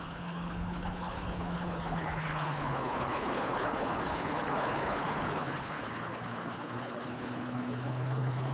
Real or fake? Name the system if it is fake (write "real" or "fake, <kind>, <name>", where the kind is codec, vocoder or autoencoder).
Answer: fake, codec, HILCodec